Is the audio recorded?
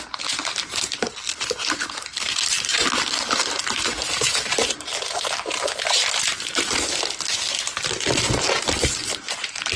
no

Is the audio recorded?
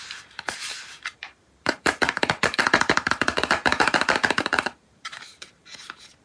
no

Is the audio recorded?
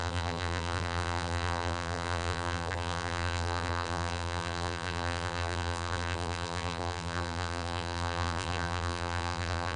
no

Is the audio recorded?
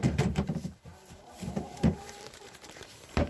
no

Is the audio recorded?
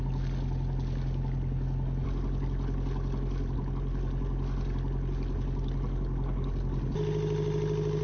yes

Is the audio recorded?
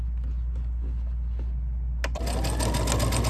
yes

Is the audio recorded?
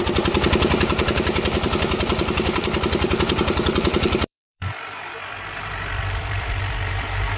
no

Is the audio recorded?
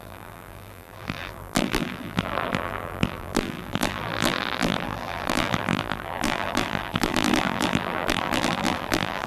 no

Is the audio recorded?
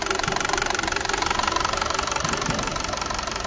no